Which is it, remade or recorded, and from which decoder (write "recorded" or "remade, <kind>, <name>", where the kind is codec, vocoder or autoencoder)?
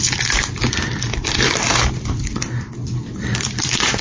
remade, vocoder, BigVGAN v2